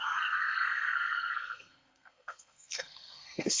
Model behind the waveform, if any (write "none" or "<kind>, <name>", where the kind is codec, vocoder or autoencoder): codec, SNAC